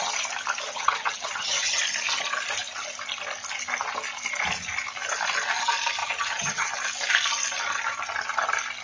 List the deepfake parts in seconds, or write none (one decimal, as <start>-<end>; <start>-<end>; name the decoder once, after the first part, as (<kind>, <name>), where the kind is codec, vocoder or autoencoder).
0.7-1.8 (vocoder, HiFi-GAN); 6.0-6.7